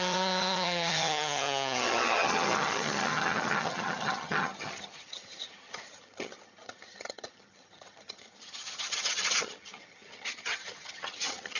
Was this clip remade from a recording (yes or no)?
yes